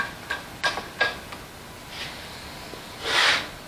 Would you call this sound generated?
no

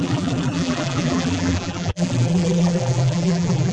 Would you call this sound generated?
yes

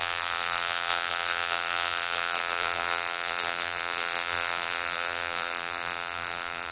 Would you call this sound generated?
yes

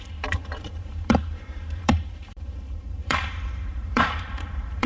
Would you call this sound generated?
yes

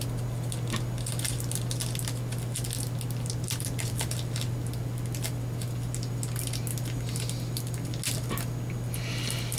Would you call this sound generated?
no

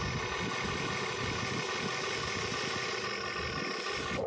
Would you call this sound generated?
no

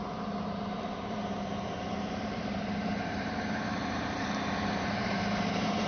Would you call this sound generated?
yes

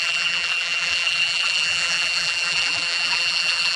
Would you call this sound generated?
yes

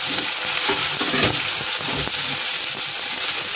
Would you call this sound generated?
yes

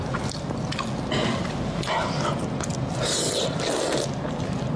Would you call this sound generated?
no